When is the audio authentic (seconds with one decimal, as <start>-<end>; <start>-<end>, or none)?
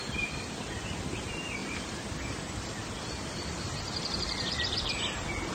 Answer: 0.7-1.6; 4.9-5.5